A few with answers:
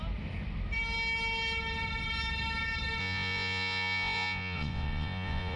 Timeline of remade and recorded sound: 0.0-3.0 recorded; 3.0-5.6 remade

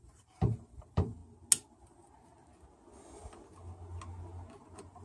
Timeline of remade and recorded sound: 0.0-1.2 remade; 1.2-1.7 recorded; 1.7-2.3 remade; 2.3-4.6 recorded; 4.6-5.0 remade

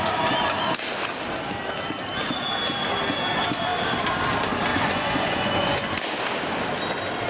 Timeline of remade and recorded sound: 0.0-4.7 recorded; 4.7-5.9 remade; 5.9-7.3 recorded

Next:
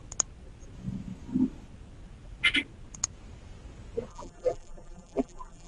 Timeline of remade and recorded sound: 0.0-4.1 recorded; 4.1-5.7 remade

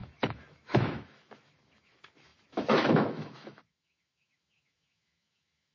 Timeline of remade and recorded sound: 0.0-5.7 remade